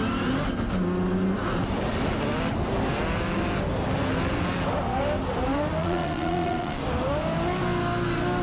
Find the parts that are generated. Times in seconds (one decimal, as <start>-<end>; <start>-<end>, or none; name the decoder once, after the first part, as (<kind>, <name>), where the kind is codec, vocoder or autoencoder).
5.8-6.8 (vocoder, Vocos)